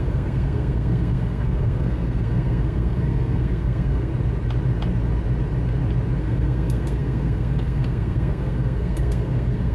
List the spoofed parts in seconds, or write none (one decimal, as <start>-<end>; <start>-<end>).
0.0-4.1; 6.2-9.7